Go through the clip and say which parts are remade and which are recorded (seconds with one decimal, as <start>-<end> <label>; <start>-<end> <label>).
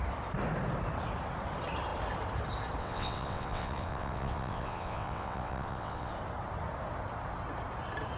0.0-2.8 recorded; 2.8-6.1 remade; 6.1-8.2 recorded